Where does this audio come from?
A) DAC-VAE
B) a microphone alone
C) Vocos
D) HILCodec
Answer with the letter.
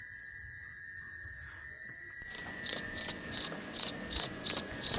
C